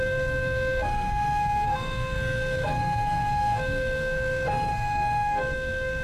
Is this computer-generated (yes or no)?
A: yes